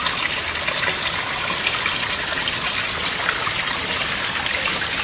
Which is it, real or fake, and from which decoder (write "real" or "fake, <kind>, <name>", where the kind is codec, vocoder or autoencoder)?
real